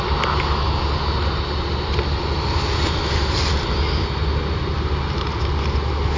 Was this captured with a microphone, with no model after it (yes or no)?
yes